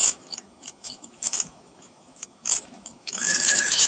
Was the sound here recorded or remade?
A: remade